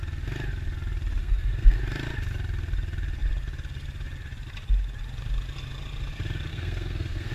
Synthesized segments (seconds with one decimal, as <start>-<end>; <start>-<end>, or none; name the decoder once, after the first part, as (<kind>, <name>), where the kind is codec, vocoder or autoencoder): 1.2-1.8 (codec, SNAC); 6.5-7.3